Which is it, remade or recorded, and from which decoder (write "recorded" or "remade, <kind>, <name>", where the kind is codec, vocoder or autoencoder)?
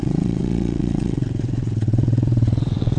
remade, vocoder, WaveNeXt